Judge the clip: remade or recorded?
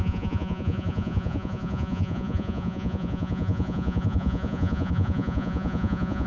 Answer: remade